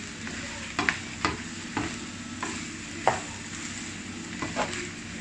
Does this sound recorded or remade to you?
recorded